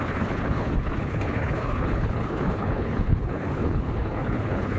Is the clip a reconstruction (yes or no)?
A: yes